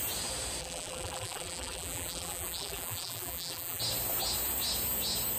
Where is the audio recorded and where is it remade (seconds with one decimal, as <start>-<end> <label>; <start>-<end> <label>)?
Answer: 0.0-0.6 recorded; 0.6-3.8 remade; 3.8-5.4 recorded